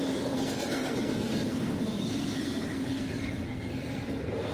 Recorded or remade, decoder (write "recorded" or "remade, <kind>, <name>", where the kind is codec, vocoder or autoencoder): remade, codec, SNAC